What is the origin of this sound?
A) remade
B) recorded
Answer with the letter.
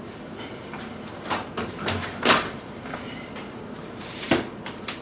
A